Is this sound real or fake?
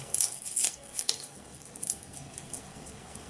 fake